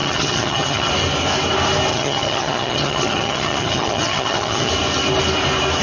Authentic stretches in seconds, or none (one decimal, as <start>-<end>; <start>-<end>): 0.9-1.9; 4.7-5.8